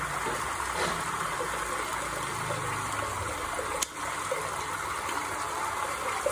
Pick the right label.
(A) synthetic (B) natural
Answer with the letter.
B